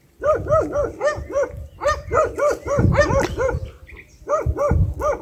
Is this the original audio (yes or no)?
yes